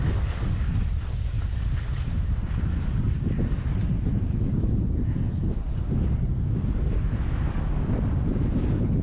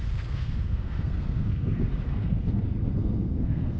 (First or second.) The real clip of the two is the first